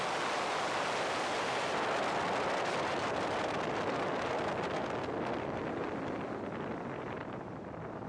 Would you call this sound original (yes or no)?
yes